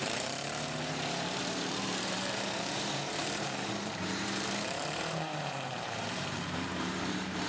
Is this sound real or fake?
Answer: fake